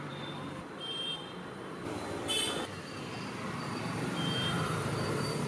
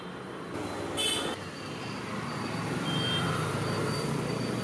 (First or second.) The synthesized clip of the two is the first